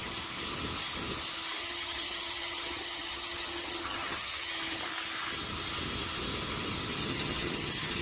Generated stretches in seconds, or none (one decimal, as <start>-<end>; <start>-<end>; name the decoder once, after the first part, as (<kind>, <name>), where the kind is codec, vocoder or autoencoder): 1.6-4.5 (vocoder, HiFi-GAN); 7.0-8.0